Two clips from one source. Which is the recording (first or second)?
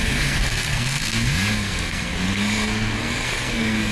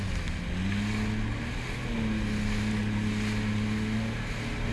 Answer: second